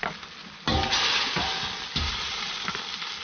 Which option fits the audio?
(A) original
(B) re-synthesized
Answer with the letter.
A